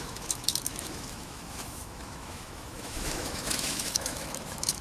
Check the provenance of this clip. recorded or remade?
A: remade